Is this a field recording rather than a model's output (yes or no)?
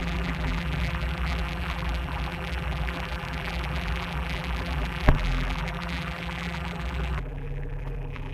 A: no